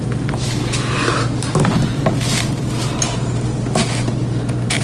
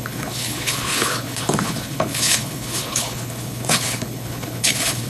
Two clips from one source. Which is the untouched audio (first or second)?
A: first